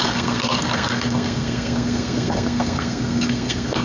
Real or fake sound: fake